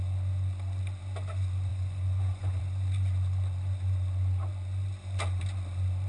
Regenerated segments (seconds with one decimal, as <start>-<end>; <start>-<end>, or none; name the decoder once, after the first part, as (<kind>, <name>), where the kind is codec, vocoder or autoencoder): 1.7-2.6 (vocoder, Vocos)